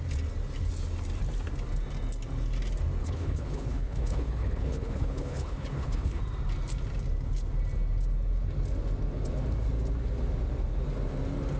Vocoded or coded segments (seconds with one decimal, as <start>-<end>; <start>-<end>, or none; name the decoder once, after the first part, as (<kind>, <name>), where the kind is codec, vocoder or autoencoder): 3.0-6.2 (codec, HILCodec)